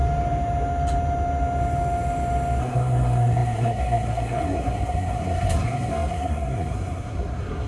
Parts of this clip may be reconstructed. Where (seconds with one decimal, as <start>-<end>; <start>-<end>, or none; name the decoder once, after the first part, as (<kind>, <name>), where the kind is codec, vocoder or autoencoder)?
2.6-7.7 (codec, SNAC)